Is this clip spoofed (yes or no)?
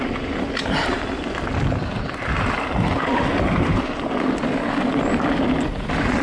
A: yes